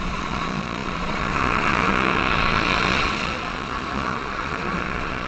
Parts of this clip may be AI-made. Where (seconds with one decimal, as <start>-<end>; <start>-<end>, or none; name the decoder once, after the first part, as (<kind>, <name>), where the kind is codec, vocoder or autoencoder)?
0.0-5.3 (vocoder, Vocos)